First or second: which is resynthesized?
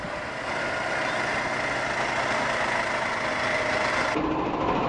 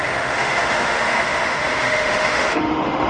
second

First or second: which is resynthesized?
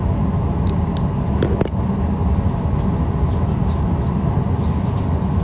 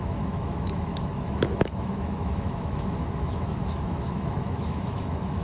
second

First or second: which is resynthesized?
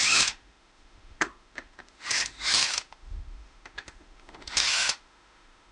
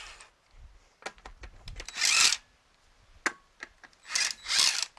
first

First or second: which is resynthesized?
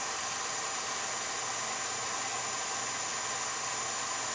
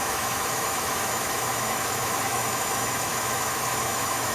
second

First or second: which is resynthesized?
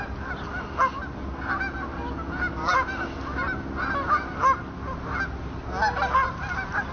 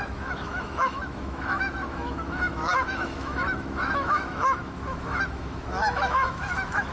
second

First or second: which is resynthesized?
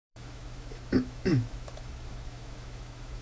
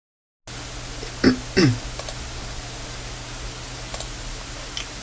first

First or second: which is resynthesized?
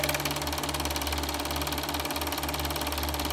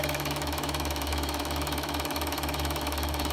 second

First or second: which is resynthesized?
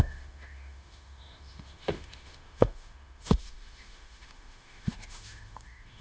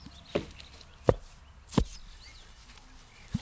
first